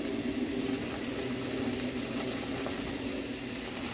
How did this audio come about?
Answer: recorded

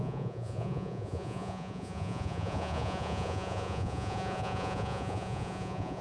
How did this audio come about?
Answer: remade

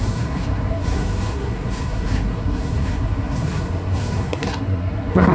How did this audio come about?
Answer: remade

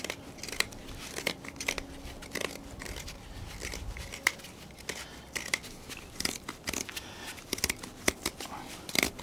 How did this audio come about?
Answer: recorded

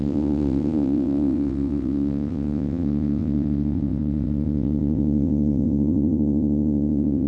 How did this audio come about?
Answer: remade